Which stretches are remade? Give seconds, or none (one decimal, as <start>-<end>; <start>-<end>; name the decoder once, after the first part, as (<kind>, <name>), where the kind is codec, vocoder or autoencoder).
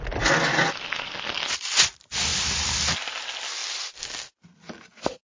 none